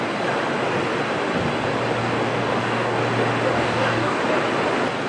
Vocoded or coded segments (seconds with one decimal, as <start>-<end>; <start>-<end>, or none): 2.0-3.0; 3.5-4.2